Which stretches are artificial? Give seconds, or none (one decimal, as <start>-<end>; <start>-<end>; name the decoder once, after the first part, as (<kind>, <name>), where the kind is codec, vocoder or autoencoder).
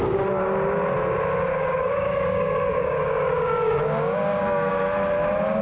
1.5-4.7 (codec, DAC)